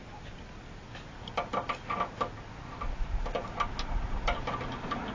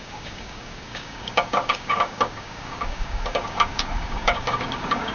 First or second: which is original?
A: first